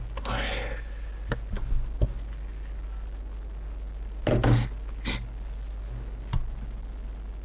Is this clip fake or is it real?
real